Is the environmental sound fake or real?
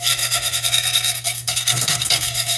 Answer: fake